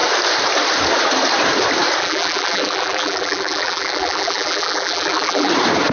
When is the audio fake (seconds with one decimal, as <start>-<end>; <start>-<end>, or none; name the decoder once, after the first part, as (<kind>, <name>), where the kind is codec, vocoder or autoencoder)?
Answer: 2.0-5.5 (vocoder, BigVGAN v2)